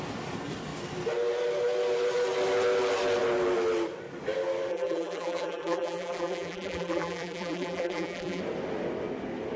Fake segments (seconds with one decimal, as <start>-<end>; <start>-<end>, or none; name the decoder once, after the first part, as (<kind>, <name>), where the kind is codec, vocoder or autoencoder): 4.7-8.4 (vocoder, BigVGAN v2)